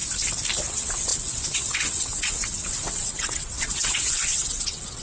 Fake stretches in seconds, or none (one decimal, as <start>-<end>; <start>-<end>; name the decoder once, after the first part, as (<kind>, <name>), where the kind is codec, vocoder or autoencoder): 0.7-5.0 (vocoder, WaveNeXt)